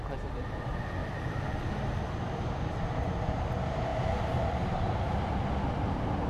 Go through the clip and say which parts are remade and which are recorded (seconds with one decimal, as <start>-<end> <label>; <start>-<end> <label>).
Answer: 0.0-1.0 recorded; 1.0-1.7 remade; 1.7-6.3 recorded